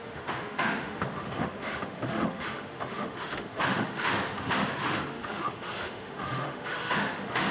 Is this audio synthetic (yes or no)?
yes